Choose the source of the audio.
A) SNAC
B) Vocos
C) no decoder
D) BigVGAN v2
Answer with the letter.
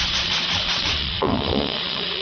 B